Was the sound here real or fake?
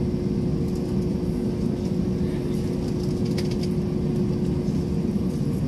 real